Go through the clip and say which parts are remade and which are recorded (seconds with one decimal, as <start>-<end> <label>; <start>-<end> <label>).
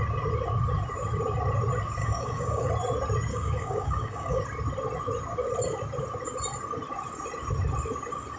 0.0-2.0 recorded; 2.0-2.7 remade; 2.7-3.3 recorded; 3.3-4.4 remade; 4.4-8.4 recorded